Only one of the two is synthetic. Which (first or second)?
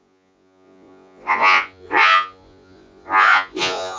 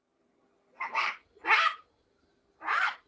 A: first